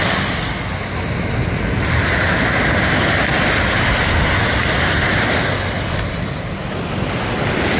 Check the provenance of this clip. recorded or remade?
recorded